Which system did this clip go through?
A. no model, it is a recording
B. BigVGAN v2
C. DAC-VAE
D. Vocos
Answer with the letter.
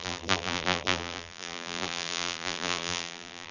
B